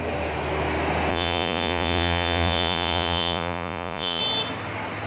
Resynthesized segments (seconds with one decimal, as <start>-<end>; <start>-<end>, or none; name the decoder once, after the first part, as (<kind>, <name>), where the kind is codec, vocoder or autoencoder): 1.1-4.2 (vocoder, Vocos)